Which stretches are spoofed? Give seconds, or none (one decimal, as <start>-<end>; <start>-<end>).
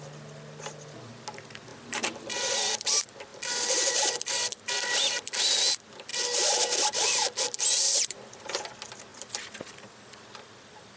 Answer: 1.7-2.9; 3.3-4.7; 6.1-8.7; 9.1-11.0